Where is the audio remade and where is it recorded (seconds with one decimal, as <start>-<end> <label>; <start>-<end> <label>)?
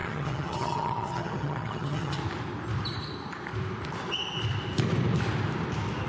0.0-2.2 remade; 2.2-6.1 recorded